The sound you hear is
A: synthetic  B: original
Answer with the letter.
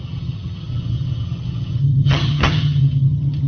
A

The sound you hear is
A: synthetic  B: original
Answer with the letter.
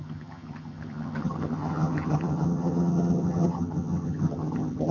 A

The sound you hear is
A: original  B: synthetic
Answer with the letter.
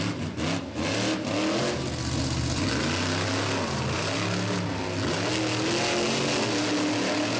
A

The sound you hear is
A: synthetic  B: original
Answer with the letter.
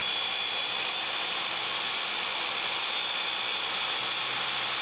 B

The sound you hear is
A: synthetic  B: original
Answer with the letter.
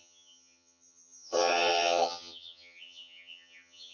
A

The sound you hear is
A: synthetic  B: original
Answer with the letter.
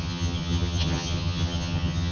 A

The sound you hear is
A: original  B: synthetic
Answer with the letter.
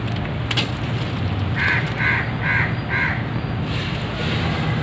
A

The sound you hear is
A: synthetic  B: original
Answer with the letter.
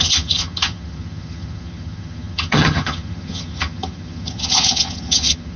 A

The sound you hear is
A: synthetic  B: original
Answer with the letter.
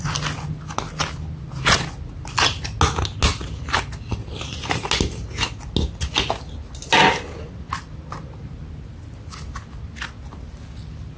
B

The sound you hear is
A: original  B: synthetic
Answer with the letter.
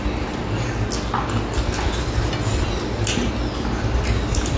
A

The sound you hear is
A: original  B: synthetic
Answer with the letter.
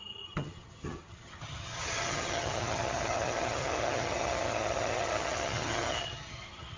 B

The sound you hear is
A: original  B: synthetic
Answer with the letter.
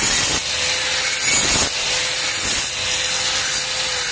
A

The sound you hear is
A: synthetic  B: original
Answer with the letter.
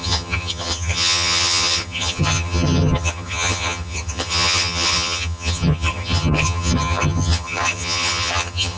A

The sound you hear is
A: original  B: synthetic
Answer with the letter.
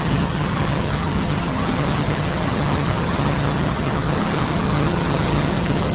B